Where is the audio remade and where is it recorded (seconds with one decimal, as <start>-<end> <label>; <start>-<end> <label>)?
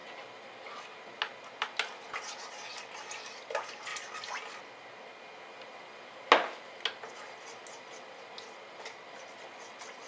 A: 0.0-10.1 recorded